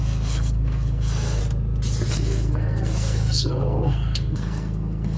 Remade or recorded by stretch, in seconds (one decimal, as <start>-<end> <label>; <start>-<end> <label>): 0.0-1.4 remade; 1.4-2.1 recorded; 2.1-5.2 remade